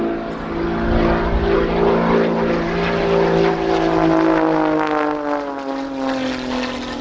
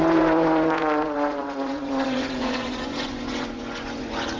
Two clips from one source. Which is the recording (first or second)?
first